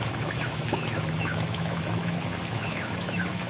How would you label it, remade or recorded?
remade